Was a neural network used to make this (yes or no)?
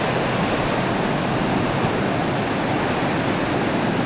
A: no